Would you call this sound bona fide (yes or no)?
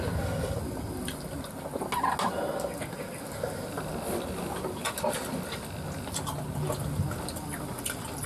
yes